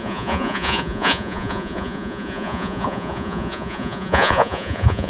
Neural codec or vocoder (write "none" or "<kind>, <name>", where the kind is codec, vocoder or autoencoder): vocoder, Vocos